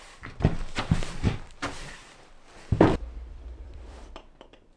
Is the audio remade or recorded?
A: remade